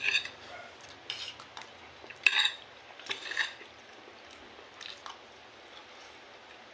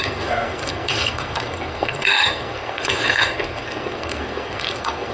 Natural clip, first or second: first